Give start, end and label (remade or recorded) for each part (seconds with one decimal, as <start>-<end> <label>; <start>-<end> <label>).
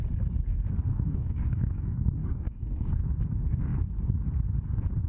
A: 0.0-0.9 recorded; 0.9-3.0 remade; 3.0-5.1 recorded